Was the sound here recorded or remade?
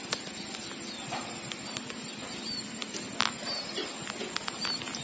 recorded